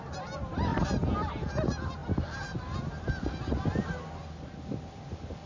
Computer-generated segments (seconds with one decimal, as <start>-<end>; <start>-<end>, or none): none

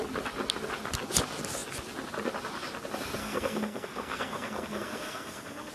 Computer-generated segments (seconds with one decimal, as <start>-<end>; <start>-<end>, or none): 3.2-5.7

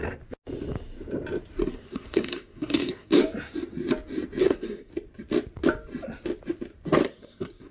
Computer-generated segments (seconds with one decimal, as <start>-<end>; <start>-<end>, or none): 1.7-3.1; 4.4-4.9; 7.0-7.7

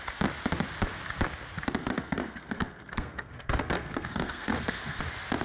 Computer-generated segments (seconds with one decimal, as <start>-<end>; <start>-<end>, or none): 1.8-5.0